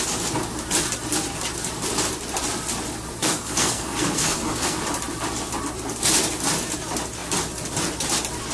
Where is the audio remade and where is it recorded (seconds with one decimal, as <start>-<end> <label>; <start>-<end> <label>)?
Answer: 0.0-3.2 recorded; 3.2-4.8 remade; 4.8-8.5 recorded